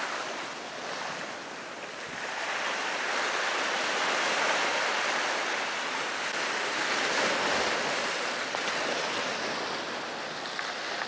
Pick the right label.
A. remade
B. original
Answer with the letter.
B